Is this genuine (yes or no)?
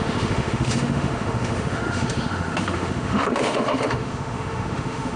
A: no